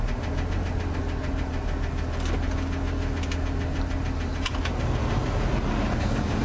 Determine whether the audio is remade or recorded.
recorded